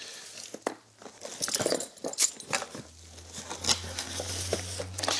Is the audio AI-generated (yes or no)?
no